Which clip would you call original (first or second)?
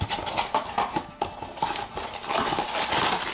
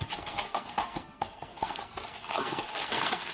first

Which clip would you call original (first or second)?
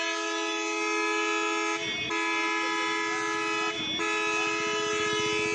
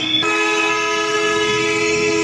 first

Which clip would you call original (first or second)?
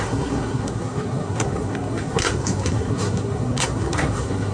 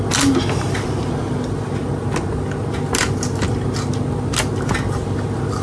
second